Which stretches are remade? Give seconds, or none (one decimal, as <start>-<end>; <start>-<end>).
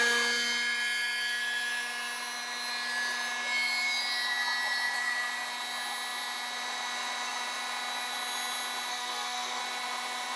8.9-9.6